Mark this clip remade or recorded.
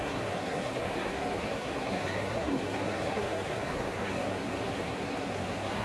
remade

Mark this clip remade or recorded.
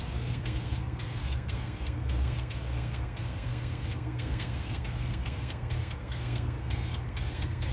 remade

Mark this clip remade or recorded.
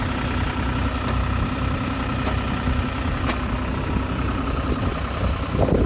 recorded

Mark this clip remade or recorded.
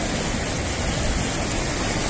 recorded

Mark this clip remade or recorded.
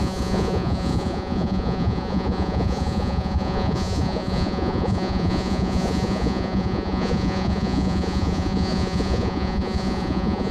remade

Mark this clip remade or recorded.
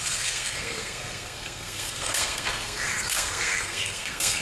remade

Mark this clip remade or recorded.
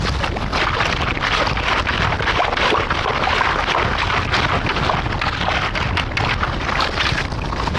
recorded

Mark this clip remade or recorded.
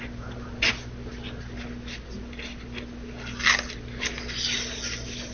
recorded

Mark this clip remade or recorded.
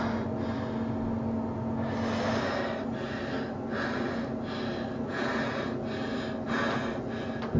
recorded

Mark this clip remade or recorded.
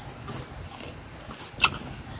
recorded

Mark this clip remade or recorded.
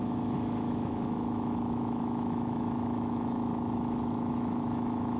remade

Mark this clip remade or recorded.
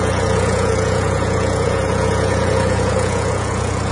remade